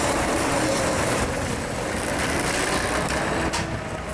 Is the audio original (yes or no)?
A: no